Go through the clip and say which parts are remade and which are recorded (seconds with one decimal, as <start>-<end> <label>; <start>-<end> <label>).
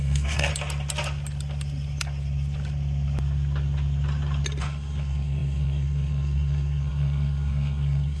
0.0-0.5 remade; 0.5-4.6 recorded; 4.6-8.2 remade